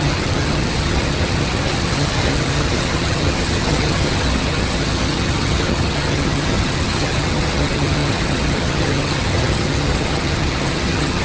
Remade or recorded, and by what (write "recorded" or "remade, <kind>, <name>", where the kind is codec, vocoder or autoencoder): remade, vocoder, HiFi-GAN